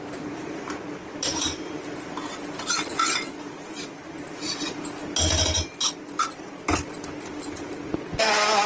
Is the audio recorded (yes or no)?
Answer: yes